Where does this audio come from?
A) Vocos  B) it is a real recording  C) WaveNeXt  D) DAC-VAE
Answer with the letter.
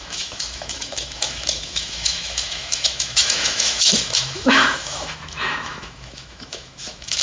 D